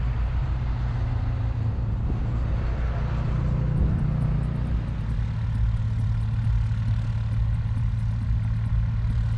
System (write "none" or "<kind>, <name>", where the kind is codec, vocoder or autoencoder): none